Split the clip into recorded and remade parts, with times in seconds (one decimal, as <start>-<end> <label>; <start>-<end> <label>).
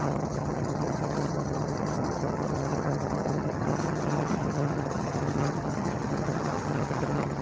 0.0-7.4 remade